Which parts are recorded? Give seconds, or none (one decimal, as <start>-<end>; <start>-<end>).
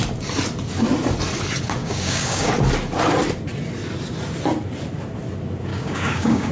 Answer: 0.0-1.8; 2.5-5.7